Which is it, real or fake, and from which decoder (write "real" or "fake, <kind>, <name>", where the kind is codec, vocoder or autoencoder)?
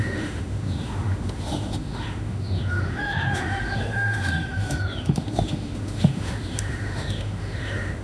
fake, autoencoder, DAC-VAE